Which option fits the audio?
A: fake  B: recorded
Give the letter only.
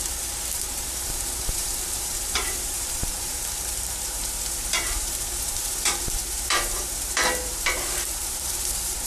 A